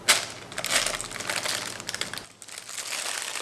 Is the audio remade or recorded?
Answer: recorded